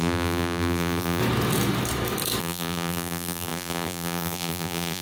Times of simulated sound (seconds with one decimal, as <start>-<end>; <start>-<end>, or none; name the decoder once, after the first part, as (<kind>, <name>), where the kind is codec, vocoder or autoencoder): 0.0-1.2 (vocoder, BigVGAN v2); 2.4-5.0